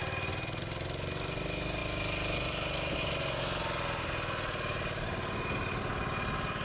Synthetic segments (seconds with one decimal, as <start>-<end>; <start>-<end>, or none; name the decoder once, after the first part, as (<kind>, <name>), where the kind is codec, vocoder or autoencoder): none